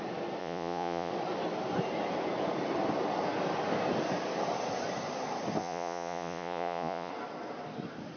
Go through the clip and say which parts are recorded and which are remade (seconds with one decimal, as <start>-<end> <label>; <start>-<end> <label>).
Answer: 0.0-0.4 recorded; 0.4-1.1 remade; 1.1-5.6 recorded; 5.6-7.1 remade; 7.1-8.2 recorded